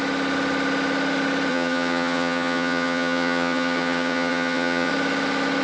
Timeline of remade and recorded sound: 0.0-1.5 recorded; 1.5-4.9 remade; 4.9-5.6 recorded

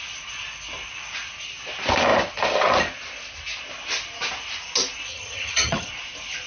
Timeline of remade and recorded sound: 0.0-5.1 recorded; 5.1-5.9 remade; 5.9-6.5 recorded

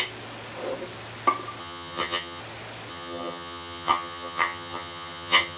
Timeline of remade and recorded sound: 0.0-1.6 recorded; 1.6-2.4 remade; 2.4-2.9 recorded; 2.9-5.6 remade

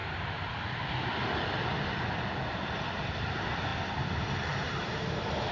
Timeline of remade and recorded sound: 0.0-5.5 recorded